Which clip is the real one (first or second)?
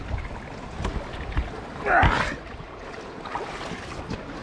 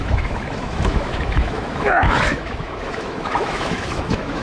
first